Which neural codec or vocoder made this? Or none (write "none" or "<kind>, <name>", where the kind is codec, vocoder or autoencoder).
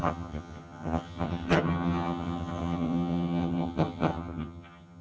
vocoder, HiFi-GAN